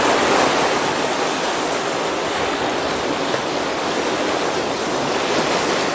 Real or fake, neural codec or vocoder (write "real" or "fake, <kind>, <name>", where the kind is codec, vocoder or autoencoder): real